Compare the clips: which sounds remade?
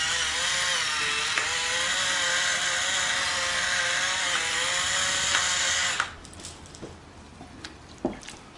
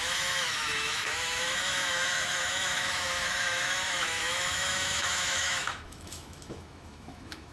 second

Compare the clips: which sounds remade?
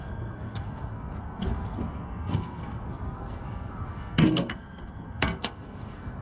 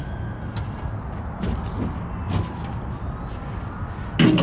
first